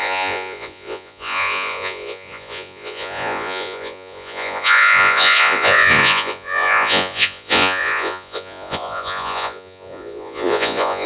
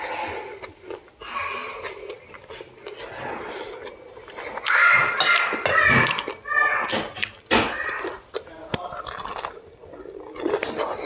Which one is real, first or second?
second